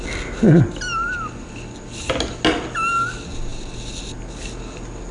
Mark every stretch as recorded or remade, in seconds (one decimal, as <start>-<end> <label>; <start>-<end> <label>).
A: 0.0-5.1 recorded